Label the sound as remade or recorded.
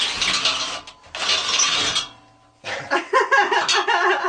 recorded